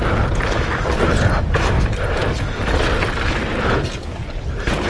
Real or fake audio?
real